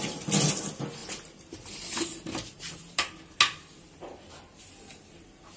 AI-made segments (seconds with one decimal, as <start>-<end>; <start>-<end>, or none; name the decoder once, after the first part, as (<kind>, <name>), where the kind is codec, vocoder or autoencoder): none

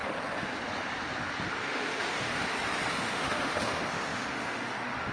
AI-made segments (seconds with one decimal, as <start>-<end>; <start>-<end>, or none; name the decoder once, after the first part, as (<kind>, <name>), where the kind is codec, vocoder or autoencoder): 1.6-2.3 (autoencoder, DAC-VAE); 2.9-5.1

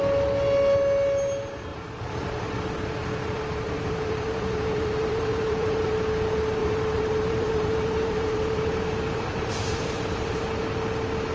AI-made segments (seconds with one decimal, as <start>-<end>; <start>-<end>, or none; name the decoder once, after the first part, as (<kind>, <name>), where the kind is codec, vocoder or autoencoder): 1.7-2.5 (vocoder, BigVGAN v2); 3.0-5.9; 6.6-10.5

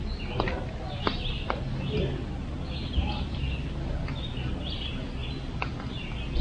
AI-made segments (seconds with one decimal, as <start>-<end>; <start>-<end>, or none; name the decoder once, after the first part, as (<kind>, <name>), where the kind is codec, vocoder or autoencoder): none

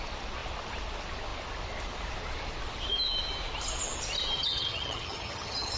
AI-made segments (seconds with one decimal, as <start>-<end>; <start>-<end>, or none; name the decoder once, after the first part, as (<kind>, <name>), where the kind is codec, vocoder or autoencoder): 4.4-5.8 (vocoder, HiFi-GAN)

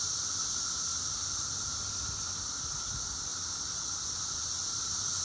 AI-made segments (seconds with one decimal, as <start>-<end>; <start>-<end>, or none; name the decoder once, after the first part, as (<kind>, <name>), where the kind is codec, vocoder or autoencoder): none